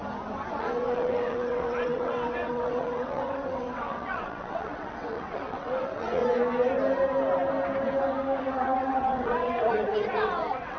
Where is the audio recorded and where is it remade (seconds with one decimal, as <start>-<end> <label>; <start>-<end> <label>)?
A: 0.0-0.5 recorded; 0.5-6.2 remade; 6.2-8.4 recorded; 8.4-10.8 remade

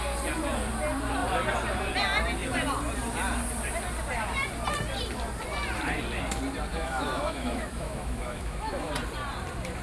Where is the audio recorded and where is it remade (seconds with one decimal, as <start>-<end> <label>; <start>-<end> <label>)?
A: 0.0-6.7 recorded; 6.7-8.9 remade; 8.9-9.8 recorded

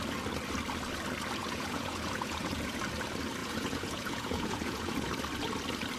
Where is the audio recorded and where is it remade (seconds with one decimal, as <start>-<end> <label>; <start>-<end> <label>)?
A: 0.0-1.4 recorded; 1.4-2.8 remade; 2.8-3.4 recorded; 3.4-5.1 remade; 5.1-6.0 recorded

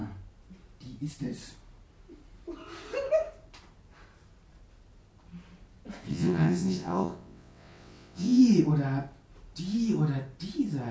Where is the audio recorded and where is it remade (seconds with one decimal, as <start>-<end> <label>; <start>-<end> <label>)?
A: 0.0-6.1 recorded; 6.1-8.4 remade; 8.4-10.9 recorded

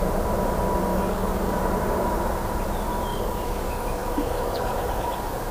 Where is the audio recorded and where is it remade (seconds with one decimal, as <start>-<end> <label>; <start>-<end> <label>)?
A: 0.0-0.9 recorded; 0.9-1.6 remade; 1.6-3.1 recorded; 3.1-5.5 remade

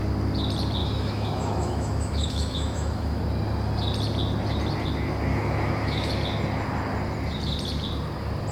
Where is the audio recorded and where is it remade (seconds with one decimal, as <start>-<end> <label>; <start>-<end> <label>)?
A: 0.0-0.8 recorded; 0.8-3.2 remade; 3.2-5.3 recorded; 5.3-6.1 remade; 6.1-8.5 recorded

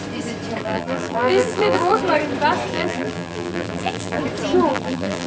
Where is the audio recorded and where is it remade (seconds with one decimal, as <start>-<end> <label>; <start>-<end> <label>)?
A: 0.0-0.6 recorded; 0.6-2.0 remade; 2.0-2.7 recorded; 2.7-4.2 remade; 4.2-4.7 recorded; 4.7-5.3 remade

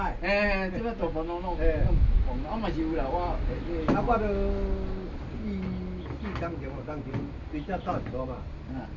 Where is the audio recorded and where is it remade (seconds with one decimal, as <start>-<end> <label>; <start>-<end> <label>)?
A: 0.0-9.0 recorded